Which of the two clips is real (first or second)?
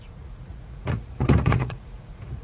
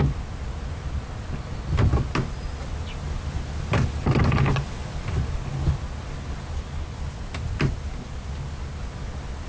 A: second